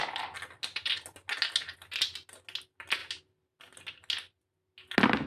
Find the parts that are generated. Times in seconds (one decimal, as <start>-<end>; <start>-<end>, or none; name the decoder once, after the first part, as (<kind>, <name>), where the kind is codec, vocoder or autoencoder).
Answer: none